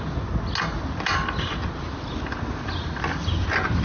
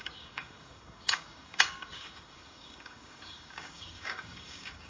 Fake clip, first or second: second